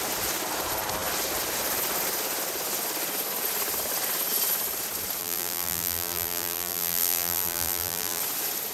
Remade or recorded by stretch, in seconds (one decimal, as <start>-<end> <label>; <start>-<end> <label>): 0.0-5.2 recorded; 5.2-8.2 remade; 8.2-8.7 recorded